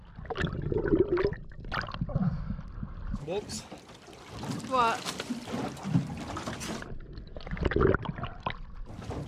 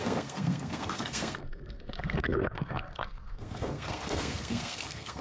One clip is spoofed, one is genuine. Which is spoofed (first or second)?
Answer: second